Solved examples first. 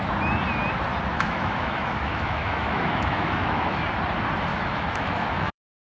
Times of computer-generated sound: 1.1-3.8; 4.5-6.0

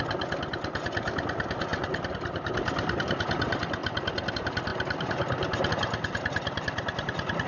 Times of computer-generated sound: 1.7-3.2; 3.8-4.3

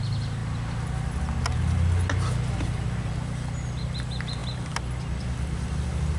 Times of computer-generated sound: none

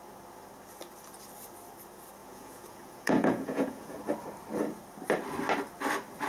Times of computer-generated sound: 2.2-4.0